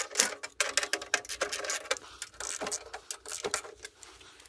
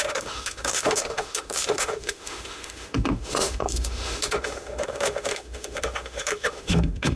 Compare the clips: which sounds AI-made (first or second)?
second